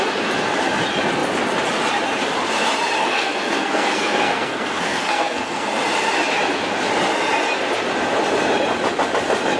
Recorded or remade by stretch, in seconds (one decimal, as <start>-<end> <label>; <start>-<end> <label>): 0.0-3.0 recorded; 3.0-5.7 remade; 5.7-9.6 recorded